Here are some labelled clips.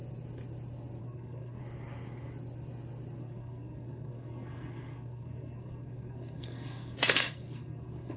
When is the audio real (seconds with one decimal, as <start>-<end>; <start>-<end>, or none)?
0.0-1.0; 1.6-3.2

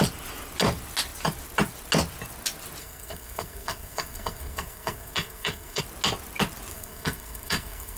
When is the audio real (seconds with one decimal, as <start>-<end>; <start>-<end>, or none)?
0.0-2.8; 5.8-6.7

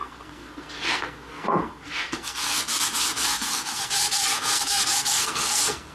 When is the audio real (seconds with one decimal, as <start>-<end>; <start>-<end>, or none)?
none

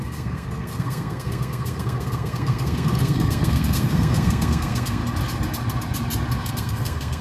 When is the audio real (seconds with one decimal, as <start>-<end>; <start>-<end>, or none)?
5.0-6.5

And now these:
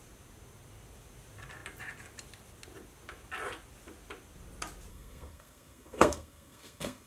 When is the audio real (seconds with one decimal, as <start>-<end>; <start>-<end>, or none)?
0.0-4.9

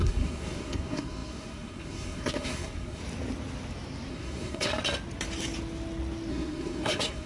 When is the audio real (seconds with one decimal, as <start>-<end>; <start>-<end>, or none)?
3.0-4.1; 4.7-6.3